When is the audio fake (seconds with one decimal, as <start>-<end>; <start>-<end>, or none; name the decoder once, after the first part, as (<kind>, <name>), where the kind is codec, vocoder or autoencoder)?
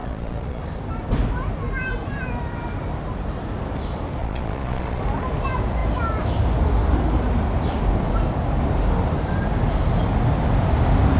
0.0-0.6 (vocoder, Vocos); 4.2-5.0